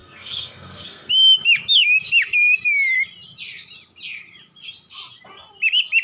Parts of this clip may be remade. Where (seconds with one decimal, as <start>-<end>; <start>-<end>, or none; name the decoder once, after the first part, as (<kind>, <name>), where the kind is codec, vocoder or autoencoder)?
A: 0.0-1.1 (codec, SNAC)